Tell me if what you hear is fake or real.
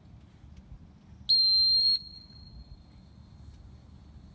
real